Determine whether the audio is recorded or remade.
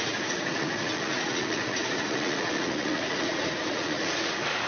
remade